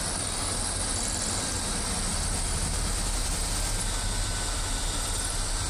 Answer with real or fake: real